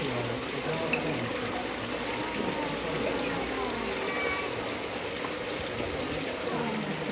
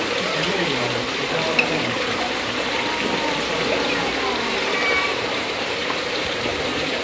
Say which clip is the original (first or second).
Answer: first